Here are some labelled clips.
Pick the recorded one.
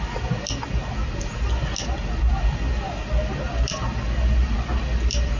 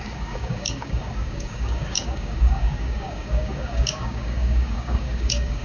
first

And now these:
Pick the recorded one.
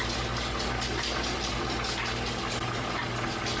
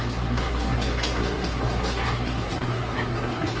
first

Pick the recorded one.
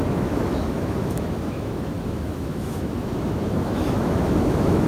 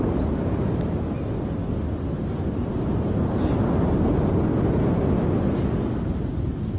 second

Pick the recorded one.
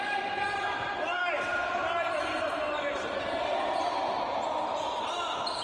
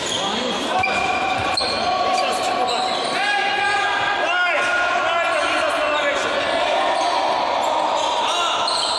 second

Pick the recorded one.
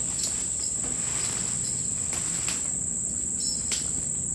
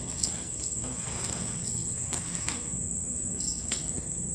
first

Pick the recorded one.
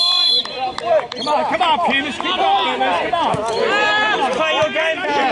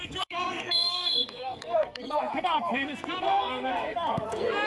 first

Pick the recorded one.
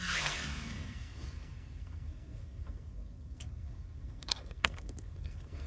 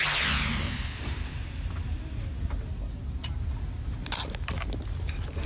second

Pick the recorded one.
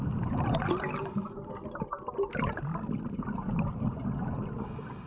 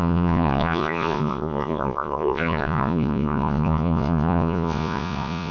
first